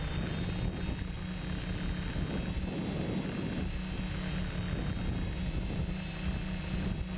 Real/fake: real